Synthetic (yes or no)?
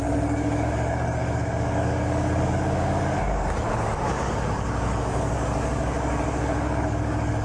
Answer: yes